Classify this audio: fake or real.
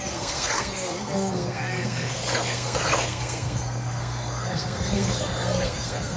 fake